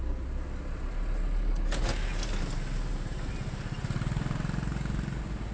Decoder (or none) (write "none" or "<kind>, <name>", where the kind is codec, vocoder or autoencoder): none